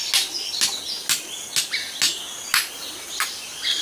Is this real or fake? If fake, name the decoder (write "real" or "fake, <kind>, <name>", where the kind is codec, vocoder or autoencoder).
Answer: real